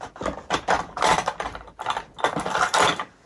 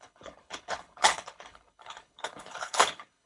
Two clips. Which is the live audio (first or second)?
first